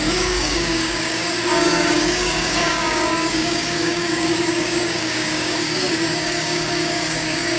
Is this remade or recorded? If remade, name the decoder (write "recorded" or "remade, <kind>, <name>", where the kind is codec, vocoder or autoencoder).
remade, codec, DAC